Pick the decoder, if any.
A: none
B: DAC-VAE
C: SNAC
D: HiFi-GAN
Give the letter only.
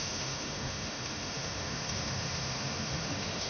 B